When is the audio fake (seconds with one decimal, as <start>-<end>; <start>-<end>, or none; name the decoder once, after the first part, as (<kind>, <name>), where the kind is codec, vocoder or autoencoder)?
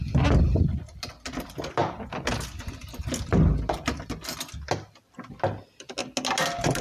none